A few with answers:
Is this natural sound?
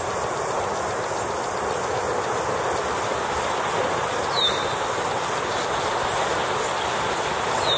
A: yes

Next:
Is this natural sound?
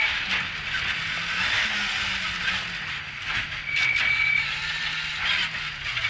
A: yes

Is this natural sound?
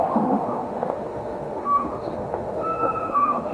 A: no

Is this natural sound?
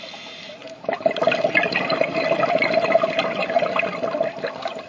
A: yes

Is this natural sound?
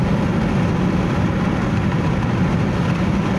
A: yes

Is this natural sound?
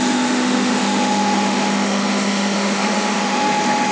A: no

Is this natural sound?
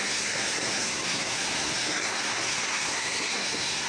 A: no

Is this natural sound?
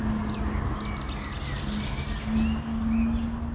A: yes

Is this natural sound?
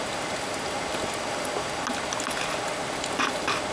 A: yes